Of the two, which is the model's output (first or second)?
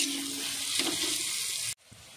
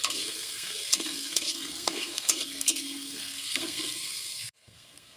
second